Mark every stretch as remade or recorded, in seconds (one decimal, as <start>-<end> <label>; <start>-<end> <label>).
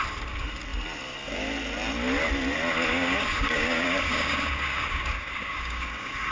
0.0-2.9 recorded; 2.9-6.3 remade